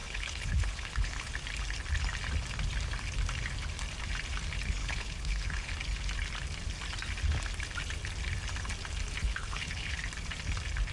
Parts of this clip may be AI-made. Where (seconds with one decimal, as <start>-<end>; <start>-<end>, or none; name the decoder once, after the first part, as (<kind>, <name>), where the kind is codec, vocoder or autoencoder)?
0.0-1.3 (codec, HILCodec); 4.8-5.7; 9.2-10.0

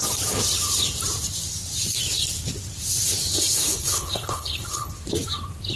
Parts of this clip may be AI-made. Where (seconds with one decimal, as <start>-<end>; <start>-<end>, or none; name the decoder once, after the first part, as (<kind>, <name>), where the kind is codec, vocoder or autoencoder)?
3.3-4.9 (codec, HILCodec)

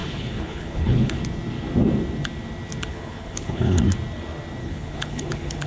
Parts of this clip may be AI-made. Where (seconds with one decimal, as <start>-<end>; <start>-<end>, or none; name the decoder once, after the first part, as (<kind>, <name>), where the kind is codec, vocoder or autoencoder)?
0.0-1.2 (codec, HILCodec); 2.9-3.8; 4.6-5.7

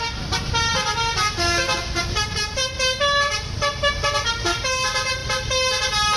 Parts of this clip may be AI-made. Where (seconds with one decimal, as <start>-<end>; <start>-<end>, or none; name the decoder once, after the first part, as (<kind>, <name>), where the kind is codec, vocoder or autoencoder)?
none

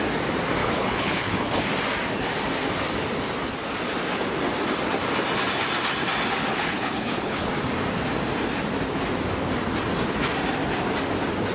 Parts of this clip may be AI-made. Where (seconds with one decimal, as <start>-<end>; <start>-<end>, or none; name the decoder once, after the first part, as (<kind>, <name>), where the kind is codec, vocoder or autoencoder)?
0.6-1.6 (codec, HILCodec); 6.5-7.5

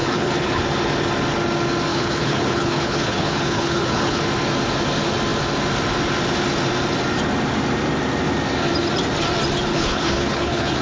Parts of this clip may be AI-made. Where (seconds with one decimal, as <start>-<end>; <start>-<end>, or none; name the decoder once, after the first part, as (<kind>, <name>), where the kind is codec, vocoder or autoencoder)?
0.0-0.6 (codec, HILCodec); 1.9-4.2; 9.7-10.8

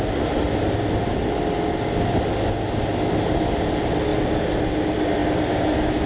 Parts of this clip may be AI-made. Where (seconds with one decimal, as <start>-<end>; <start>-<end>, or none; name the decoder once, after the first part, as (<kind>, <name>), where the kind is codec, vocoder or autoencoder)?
none

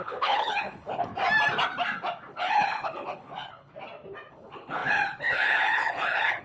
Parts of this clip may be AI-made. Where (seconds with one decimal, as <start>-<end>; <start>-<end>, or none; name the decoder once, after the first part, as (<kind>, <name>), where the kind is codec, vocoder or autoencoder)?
0.0-1.1 (codec, HILCodec); 2.3-3.7; 4.3-6.4